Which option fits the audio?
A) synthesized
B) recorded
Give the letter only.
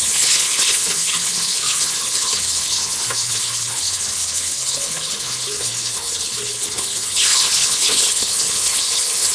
A